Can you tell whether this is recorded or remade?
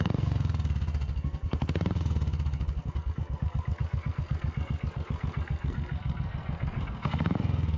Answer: remade